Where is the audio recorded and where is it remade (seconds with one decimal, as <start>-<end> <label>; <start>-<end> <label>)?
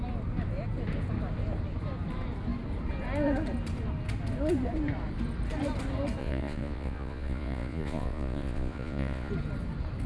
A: 0.0-6.2 recorded; 6.2-9.3 remade; 9.3-10.1 recorded